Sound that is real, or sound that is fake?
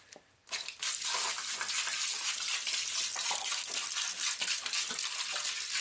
real